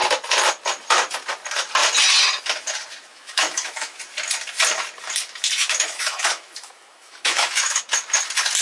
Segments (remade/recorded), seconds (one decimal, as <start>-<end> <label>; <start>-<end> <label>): 0.0-3.1 recorded; 3.1-4.0 remade; 4.0-5.6 recorded; 5.6-7.8 remade; 7.8-8.6 recorded